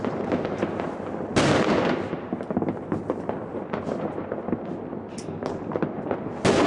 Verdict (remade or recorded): recorded